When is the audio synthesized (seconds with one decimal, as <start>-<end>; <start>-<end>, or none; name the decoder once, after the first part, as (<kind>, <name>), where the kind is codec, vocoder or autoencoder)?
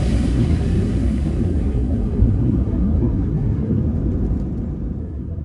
0.0-3.8 (codec, SNAC); 5.0-5.4